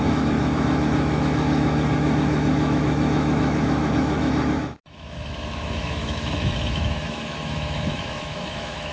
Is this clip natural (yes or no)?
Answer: no